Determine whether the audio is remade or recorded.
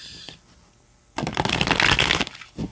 recorded